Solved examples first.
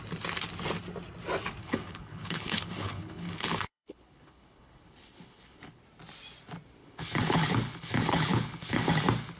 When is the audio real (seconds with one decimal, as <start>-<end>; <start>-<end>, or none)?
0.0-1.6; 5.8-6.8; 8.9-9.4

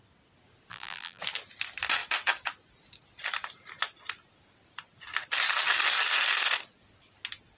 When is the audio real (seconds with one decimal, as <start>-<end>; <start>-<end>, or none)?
0.0-0.7; 1.2-7.6

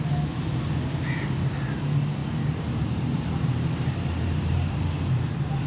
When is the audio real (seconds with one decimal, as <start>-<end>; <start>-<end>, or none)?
0.0-2.2; 4.8-5.7

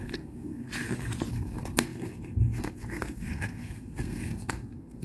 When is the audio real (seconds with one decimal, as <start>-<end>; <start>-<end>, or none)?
0.7-1.3

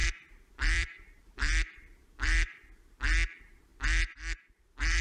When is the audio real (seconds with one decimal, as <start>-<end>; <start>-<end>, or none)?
3.0-5.0